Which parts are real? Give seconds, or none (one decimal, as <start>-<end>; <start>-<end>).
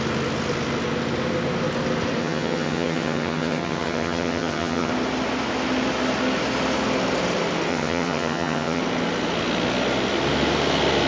0.0-2.2; 4.9-7.7; 8.8-11.1